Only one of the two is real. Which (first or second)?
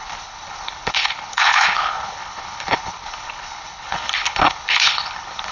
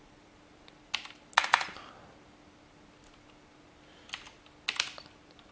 second